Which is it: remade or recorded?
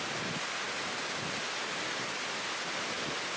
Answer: recorded